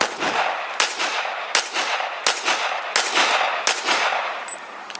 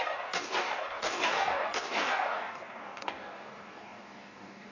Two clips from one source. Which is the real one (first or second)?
first